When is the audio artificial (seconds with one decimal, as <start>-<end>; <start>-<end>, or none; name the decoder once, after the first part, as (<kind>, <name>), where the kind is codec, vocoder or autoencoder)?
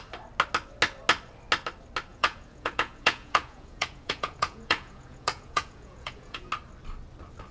2.1-6.5 (vocoder, Vocos)